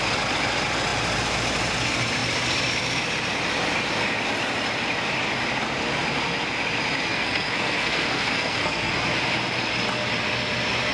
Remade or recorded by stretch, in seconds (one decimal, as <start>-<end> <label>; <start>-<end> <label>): 0.0-7.1 recorded; 7.1-8.9 remade; 8.9-10.9 recorded